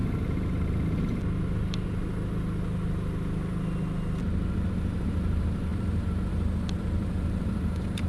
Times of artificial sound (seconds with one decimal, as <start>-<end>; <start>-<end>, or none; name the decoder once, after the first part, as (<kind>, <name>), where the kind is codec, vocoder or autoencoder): 4.7-8.1 (vocoder, BigVGAN v2)